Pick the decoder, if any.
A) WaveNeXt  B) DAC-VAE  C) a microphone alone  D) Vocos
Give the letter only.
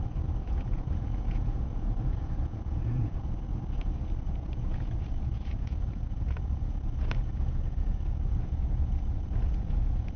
D